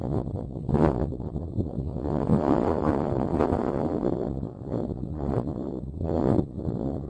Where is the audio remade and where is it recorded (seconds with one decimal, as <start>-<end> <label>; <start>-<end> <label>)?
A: 0.0-7.1 remade